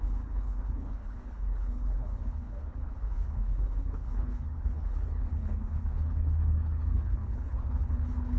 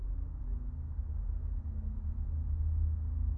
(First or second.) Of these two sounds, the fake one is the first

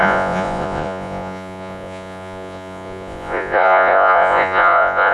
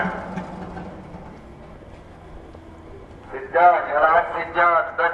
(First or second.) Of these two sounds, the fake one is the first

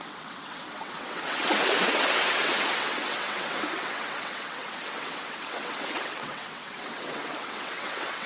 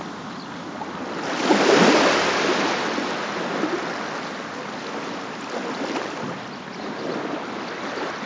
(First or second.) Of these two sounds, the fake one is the first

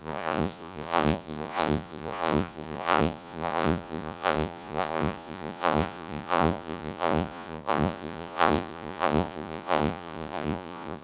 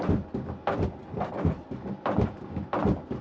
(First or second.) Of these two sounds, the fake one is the first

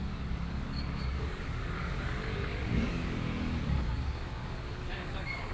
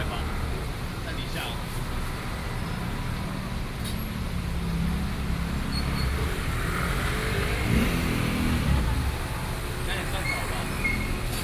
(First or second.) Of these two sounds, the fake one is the first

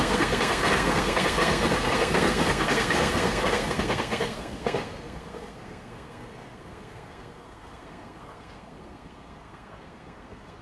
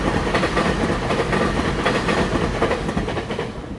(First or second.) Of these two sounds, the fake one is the first